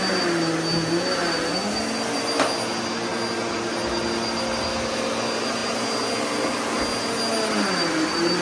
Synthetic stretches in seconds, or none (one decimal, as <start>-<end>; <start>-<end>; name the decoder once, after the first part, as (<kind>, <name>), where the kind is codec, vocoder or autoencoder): none